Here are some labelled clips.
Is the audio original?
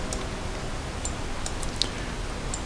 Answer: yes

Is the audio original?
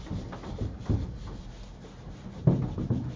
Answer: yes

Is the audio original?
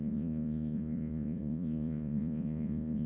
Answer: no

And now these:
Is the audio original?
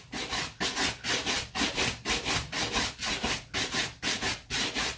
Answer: yes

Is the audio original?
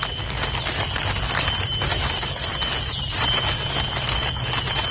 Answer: yes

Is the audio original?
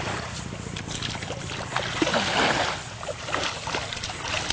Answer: yes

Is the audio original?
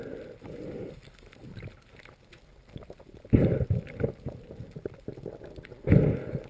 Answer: yes